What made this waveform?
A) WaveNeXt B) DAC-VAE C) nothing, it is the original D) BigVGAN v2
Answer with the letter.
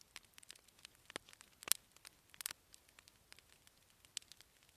C